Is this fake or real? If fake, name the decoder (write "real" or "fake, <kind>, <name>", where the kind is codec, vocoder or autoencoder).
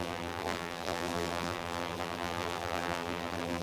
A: fake, vocoder, BigVGAN v2